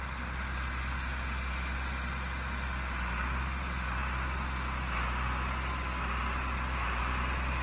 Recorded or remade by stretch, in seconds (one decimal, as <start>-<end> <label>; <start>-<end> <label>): 0.0-7.6 recorded